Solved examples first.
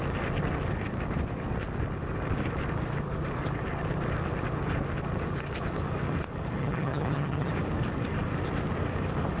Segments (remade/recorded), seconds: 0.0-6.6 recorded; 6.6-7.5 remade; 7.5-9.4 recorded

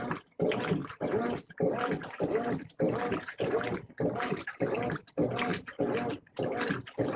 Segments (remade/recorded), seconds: 0.0-0.8 remade; 0.8-5.1 recorded; 5.1-5.5 remade; 5.5-6.4 recorded; 6.4-7.2 remade

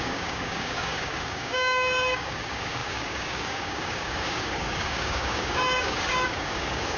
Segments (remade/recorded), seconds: 0.0-7.0 remade